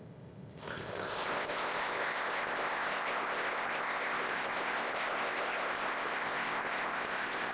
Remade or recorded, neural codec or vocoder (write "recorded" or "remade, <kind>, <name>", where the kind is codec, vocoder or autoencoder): remade, codec, ZipCodec